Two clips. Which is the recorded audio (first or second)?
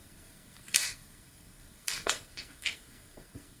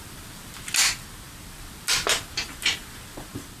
second